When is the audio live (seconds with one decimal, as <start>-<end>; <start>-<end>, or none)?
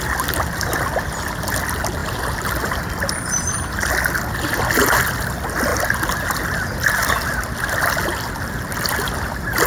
0.0-9.7